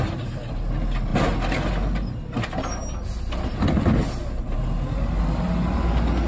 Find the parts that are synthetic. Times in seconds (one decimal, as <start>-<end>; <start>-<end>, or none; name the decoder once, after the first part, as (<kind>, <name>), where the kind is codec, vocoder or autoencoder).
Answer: none